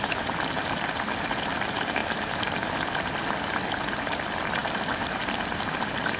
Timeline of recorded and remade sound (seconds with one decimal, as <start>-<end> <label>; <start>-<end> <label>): 0.0-2.0 recorded; 2.0-2.7 remade; 2.7-4.6 recorded; 4.6-5.2 remade; 5.2-6.2 recorded